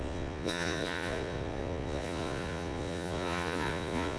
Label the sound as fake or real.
fake